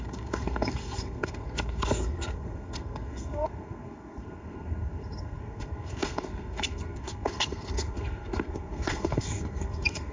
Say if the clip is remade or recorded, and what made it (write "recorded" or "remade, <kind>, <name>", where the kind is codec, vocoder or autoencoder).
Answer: remade, codec, SNAC